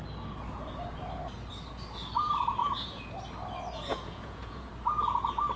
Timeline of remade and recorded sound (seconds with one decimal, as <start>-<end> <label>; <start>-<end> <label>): 0.0-2.6 recorded; 2.6-3.1 remade; 3.1-3.9 recorded; 3.9-4.7 remade; 4.7-5.6 recorded